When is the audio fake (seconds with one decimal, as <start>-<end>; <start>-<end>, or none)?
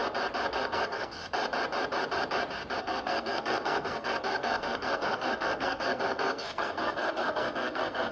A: 0.5-1.2; 2.8-8.1